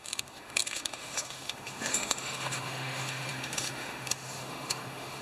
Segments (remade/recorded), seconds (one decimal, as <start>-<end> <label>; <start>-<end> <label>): 0.0-5.2 remade